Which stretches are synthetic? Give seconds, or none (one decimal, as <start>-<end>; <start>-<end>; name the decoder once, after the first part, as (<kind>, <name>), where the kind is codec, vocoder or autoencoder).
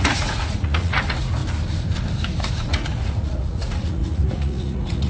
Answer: 0.0-1.4 (vocoder, Vocos); 2.4-5.1